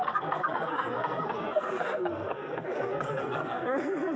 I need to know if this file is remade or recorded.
remade